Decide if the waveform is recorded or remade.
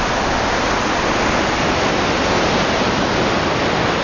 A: recorded